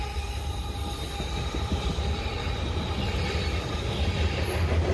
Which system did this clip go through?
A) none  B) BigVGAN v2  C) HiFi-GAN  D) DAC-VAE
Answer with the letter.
A